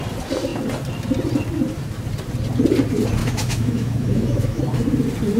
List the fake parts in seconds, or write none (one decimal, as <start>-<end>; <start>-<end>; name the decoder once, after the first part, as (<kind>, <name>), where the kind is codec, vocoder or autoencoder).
3.2-4.6 (autoencoder, DAC-VAE)